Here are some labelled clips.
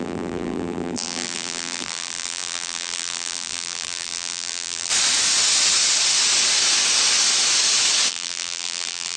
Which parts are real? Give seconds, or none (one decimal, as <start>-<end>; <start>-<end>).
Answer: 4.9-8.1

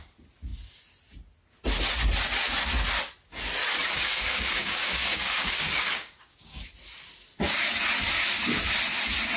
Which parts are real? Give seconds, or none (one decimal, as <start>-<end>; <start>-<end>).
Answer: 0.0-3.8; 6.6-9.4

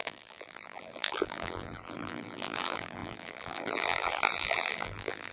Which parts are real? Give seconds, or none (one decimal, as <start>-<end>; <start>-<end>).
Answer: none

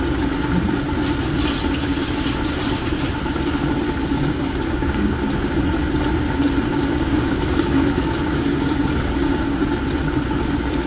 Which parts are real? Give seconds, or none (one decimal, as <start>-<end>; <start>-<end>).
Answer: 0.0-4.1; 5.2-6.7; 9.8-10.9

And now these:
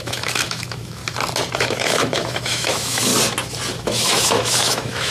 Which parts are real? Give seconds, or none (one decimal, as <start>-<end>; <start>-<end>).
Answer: 1.0-1.6; 3.1-3.8

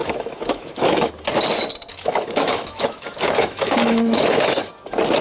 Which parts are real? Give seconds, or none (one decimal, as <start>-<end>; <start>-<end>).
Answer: 1.1-1.9; 4.7-5.2

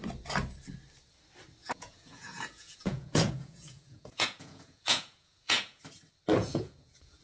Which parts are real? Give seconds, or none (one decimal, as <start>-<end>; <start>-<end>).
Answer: 0.0-1.6; 5.8-6.4

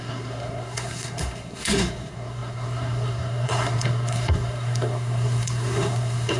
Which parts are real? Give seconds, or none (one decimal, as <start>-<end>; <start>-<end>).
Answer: none